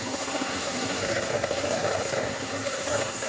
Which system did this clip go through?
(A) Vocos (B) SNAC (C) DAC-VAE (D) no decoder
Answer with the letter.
B